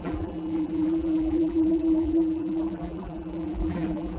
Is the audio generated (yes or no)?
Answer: yes